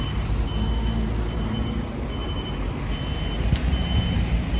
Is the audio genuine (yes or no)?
yes